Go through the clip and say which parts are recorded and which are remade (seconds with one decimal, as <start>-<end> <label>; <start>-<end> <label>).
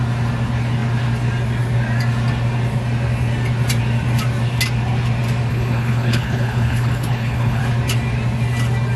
0.0-5.5 recorded; 5.5-7.6 remade; 7.6-9.0 recorded